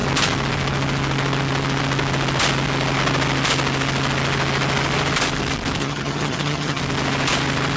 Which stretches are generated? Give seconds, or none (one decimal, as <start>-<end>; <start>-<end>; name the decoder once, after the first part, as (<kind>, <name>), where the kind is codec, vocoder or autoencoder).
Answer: 5.8-6.8 (vocoder, HiFi-GAN)